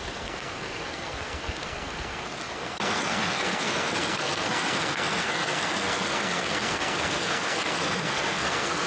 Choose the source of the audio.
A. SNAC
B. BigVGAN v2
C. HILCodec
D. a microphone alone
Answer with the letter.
A